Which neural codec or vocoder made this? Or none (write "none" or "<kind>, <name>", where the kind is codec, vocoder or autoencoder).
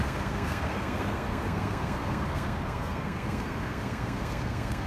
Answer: codec, SNAC